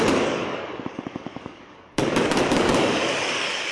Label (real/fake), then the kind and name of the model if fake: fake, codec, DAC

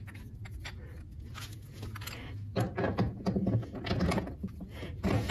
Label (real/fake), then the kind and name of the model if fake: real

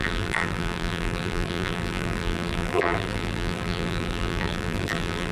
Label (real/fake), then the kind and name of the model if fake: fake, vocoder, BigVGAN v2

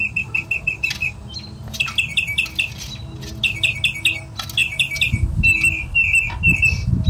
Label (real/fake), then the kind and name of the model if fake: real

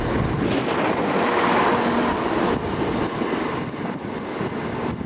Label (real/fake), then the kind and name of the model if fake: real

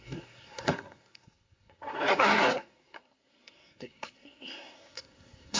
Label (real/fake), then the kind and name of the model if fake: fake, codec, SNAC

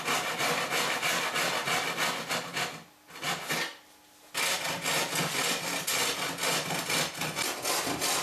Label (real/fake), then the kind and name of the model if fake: real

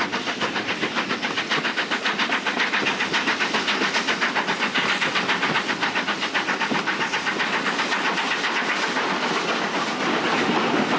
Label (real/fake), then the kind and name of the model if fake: real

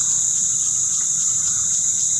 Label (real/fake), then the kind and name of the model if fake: real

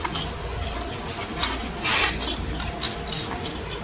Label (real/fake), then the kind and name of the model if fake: real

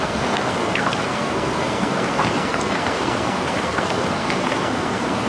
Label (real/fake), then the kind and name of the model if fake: fake, codec, SNAC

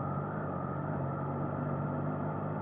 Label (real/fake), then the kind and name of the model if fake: real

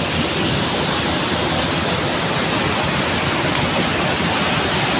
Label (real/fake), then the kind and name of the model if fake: real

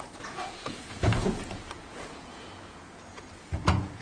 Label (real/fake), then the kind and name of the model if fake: fake, vocoder, Vocos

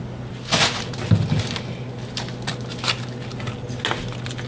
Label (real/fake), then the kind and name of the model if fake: real